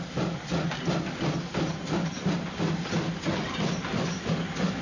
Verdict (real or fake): real